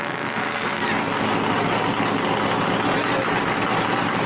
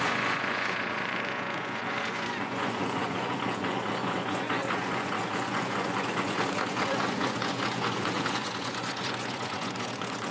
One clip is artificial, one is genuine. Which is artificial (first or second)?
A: second